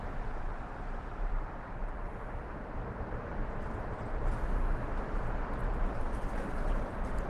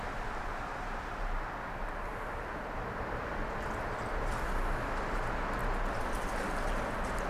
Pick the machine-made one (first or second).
first